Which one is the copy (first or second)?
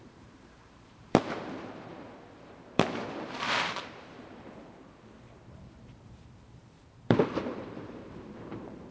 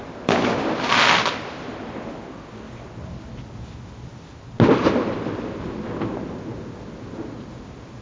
first